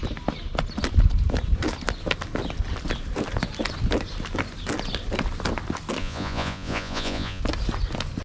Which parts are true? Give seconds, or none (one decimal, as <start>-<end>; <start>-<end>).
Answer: 0.0-6.0; 7.4-8.2